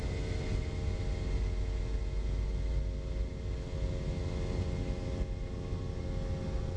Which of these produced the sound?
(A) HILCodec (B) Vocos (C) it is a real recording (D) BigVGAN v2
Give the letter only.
C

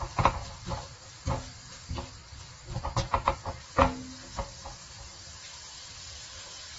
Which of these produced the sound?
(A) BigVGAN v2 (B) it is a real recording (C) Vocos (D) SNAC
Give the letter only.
B